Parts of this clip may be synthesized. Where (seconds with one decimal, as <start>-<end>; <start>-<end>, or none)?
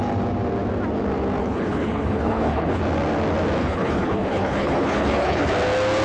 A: 1.4-2.8; 3.6-5.5